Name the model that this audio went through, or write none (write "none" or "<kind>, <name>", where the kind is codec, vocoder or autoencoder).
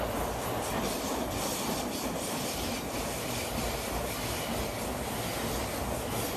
none